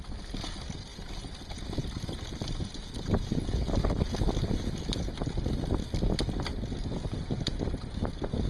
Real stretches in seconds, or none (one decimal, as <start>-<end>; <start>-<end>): 0.0-7.0; 7.6-8.5